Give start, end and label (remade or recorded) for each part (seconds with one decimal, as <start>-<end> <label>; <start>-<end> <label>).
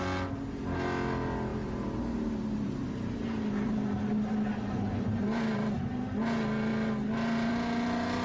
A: 0.0-1.5 recorded; 1.5-5.9 remade; 5.9-8.2 recorded